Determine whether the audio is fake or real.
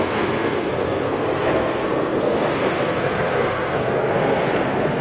fake